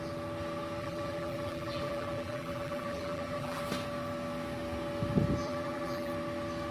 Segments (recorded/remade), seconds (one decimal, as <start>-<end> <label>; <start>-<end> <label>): 0.0-0.8 recorded; 0.8-3.6 remade; 3.6-5.4 recorded; 5.4-6.1 remade; 6.1-6.7 recorded